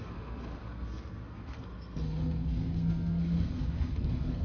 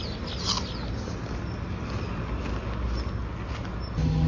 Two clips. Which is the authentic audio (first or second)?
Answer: second